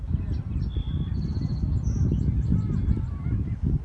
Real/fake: real